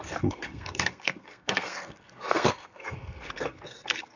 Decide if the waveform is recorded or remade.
remade